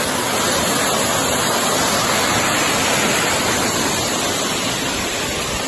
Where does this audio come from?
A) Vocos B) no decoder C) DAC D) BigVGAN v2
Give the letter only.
B